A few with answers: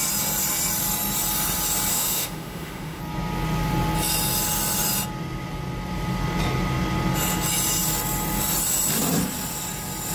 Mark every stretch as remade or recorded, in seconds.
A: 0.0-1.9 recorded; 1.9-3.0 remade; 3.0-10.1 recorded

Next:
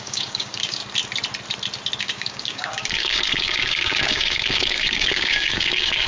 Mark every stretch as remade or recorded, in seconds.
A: 0.0-0.8 remade; 0.8-2.0 recorded; 2.0-6.1 remade

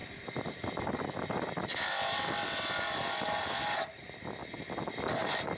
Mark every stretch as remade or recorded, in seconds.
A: 0.0-5.6 recorded